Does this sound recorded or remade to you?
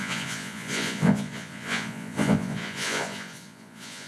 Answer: remade